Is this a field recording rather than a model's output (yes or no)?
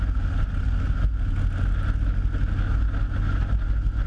yes